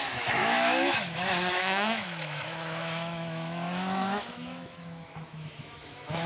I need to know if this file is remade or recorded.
remade